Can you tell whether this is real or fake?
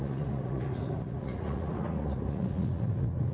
fake